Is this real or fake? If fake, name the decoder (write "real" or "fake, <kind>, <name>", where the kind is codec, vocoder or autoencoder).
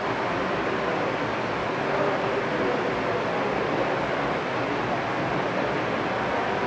real